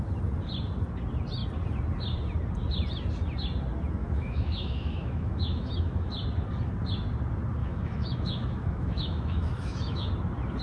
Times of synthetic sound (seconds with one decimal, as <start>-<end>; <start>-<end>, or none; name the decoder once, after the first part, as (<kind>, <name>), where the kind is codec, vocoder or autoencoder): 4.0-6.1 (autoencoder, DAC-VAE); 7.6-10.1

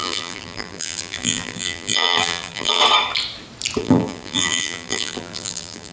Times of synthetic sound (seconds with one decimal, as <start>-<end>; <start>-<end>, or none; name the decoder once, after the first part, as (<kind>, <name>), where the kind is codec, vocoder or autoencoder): 0.0-2.8 (vocoder, BigVGAN v2); 3.8-5.9

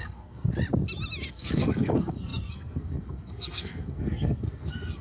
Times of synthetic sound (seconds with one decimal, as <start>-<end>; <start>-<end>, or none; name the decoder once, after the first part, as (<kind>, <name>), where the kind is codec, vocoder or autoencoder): 0.0-0.5 (codec, SNAC); 1.3-5.0

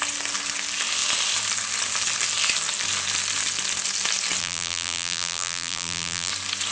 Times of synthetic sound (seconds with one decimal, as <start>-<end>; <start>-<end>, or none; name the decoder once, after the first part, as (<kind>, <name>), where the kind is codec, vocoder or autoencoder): 4.4-6.3 (vocoder, BigVGAN v2)